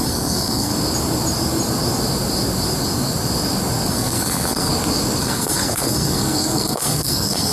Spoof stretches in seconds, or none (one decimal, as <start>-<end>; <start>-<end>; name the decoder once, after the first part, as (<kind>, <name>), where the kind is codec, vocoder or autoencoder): 0.0-0.7 (codec, SNAC); 3.9-4.7; 5.2-7.5